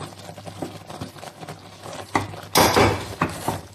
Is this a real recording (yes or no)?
yes